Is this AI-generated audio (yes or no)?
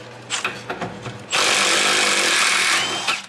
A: no